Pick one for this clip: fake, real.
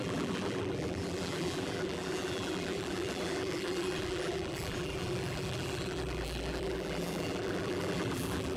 fake